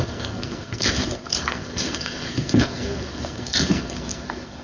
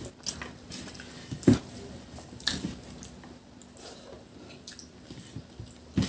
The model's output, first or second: first